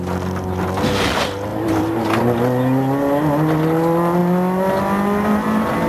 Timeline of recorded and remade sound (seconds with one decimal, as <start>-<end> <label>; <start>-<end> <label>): 0.0-1.5 recorded; 1.5-2.2 remade; 2.2-5.9 recorded